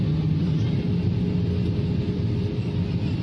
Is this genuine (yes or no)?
yes